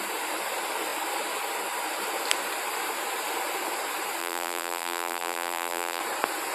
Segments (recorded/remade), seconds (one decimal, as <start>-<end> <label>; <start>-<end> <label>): 0.0-4.2 recorded; 4.2-6.0 remade; 6.0-6.5 recorded